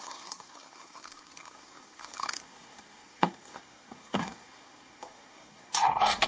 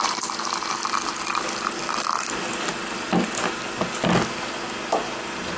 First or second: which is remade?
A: first